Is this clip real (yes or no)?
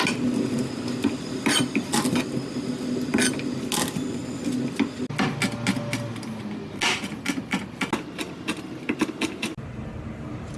yes